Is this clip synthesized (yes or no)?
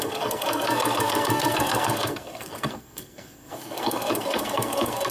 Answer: yes